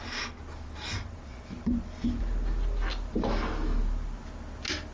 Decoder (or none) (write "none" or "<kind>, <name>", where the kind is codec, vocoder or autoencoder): none